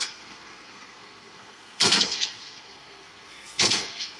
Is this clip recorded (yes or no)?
no